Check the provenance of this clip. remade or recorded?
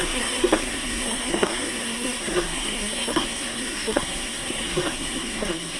remade